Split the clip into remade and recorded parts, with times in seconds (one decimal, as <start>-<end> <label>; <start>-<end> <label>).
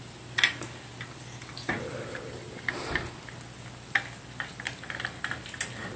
0.0-6.0 recorded